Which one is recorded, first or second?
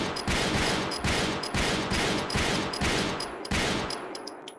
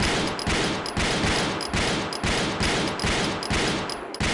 second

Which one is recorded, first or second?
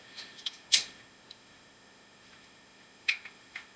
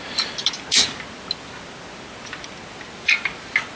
second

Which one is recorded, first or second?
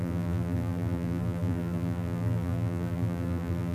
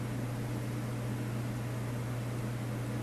second